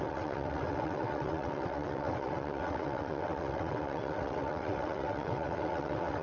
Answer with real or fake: fake